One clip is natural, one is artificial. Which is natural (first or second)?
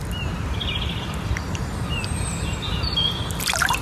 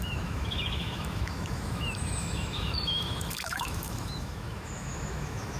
first